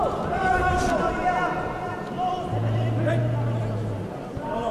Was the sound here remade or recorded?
recorded